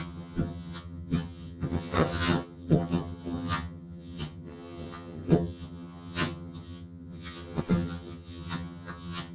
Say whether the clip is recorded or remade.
remade